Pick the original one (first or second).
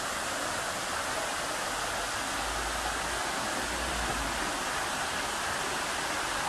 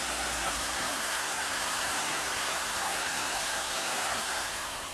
first